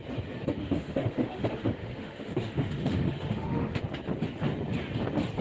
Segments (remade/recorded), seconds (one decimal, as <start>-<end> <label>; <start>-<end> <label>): 0.0-0.6 recorded; 0.6-3.8 remade; 3.8-5.4 recorded